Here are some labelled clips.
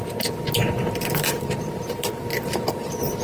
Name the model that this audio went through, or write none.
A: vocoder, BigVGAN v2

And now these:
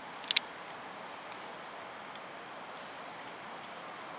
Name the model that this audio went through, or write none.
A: none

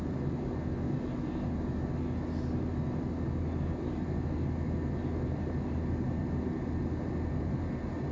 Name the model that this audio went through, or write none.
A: none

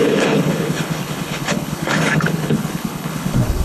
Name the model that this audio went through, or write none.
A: codec, HILCodec